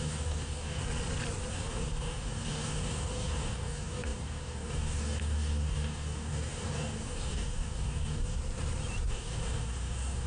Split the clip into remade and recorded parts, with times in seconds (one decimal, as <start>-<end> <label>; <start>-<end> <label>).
0.0-0.8 remade; 0.8-1.5 recorded; 1.5-8.4 remade; 8.4-9.1 recorded; 9.1-10.3 remade